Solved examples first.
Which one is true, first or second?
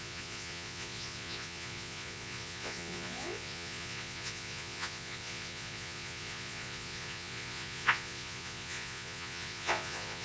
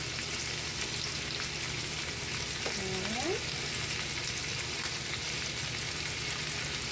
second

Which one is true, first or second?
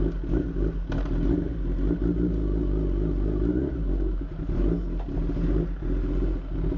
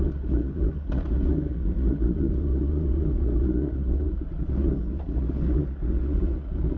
first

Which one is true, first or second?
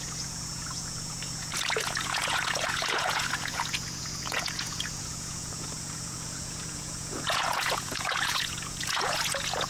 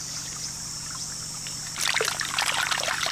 second